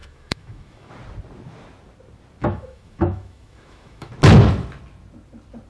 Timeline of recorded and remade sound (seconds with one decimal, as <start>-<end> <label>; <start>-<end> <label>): 0.0-0.9 remade; 0.9-2.4 recorded; 2.4-4.1 remade; 4.1-5.7 recorded